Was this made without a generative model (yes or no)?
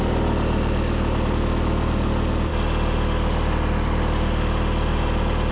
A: yes